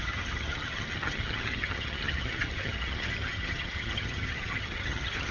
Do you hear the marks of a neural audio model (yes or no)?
yes